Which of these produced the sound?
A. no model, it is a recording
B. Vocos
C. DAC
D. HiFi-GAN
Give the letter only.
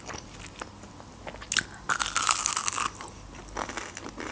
A